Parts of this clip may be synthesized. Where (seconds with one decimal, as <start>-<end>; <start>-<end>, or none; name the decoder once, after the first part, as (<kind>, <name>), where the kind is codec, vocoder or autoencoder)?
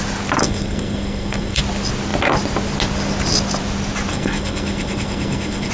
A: 0.4-1.6 (codec, SNAC); 4.1-5.7